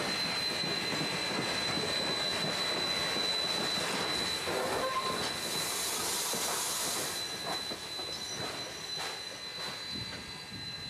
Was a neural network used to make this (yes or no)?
no